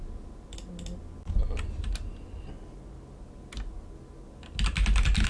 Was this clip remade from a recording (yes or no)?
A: no